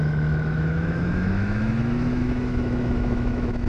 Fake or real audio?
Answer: fake